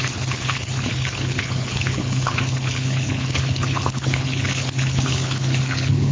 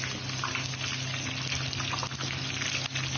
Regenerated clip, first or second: first